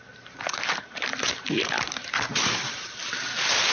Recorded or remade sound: recorded